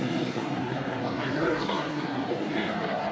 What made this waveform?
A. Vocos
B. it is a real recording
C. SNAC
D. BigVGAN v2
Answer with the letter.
C